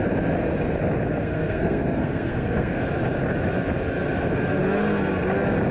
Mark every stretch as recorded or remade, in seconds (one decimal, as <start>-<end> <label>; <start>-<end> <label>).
0.0-1.2 recorded; 1.2-2.8 remade; 2.8-5.7 recorded